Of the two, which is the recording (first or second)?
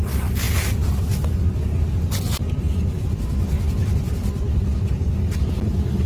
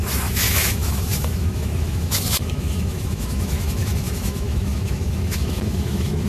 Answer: first